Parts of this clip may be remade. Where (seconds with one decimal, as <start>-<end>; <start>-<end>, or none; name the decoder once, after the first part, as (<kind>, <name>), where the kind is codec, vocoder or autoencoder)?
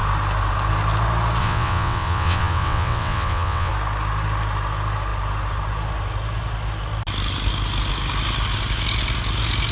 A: 1.4-3.7 (vocoder, WaveNeXt)